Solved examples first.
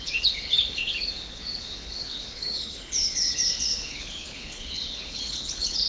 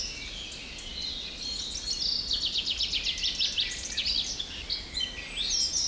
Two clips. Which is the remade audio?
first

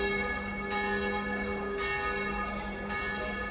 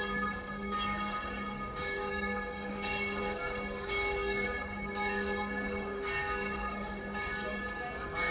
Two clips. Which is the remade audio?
second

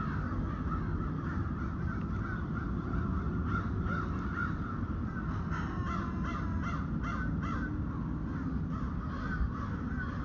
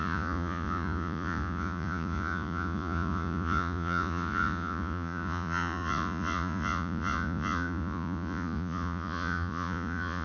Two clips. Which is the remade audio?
second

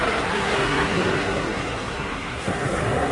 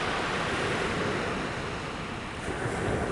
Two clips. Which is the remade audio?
first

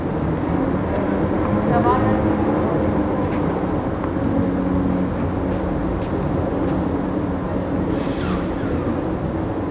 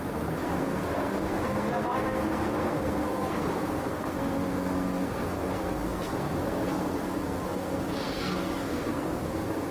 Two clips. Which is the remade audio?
second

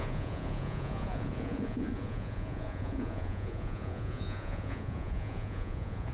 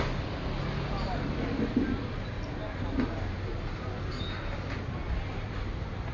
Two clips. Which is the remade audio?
first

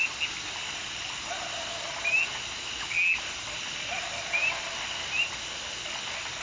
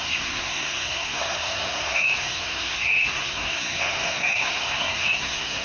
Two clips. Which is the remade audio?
second